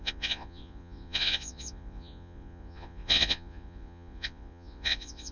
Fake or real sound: fake